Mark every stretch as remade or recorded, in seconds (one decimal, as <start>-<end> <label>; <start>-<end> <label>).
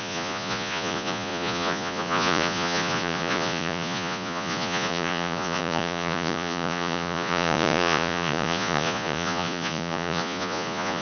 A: 0.0-11.0 remade